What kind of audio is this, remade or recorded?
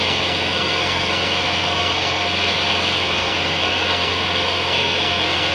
remade